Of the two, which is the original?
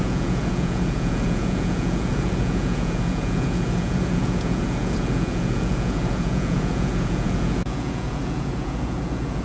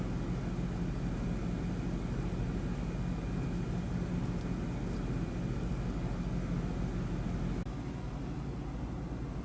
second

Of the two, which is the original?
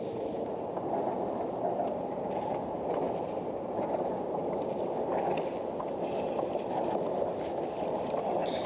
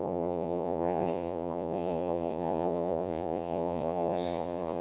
first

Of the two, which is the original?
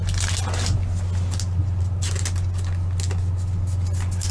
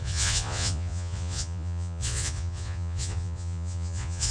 first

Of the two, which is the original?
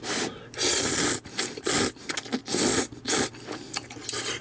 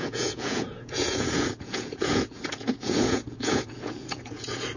first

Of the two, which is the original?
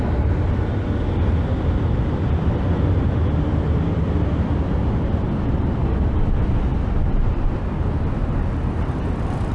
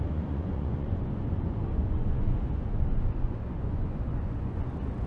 first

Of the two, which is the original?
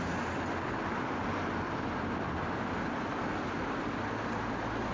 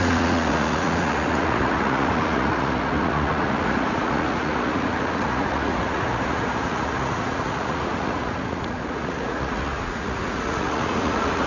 first